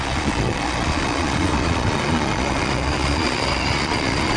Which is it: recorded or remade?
remade